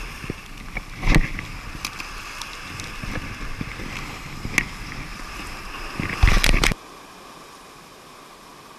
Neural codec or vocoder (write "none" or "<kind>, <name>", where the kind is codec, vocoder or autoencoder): none